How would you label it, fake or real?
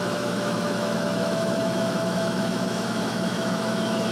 fake